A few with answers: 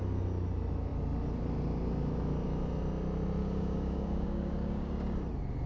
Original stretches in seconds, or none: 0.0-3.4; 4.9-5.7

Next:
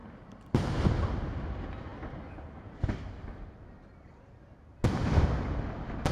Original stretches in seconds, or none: 0.0-6.1